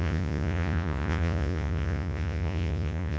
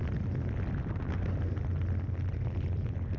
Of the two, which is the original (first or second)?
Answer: second